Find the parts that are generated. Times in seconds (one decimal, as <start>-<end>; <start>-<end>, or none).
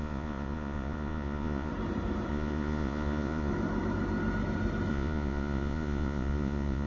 0.0-1.7; 2.3-3.5; 4.9-6.9